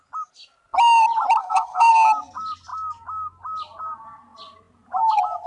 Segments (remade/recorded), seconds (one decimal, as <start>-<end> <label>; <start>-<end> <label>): 0.0-1.4 recorded; 1.4-1.9 remade; 1.9-5.5 recorded